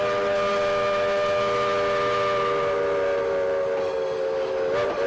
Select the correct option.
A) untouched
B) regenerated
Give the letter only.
A